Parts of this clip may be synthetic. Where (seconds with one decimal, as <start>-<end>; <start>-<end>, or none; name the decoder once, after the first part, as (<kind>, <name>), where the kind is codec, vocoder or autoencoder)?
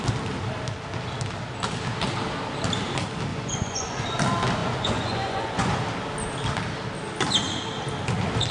3.3-4.0 (vocoder, Vocos); 4.6-5.7